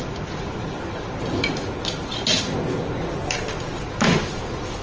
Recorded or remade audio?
recorded